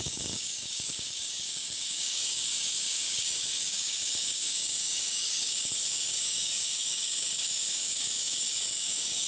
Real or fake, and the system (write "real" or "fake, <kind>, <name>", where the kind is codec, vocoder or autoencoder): fake, codec, DAC